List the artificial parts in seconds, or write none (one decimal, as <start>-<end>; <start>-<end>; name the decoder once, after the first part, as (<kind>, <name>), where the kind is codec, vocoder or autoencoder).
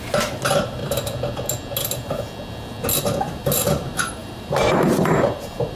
0.0-0.8 (vocoder, BigVGAN v2); 3.2-5.8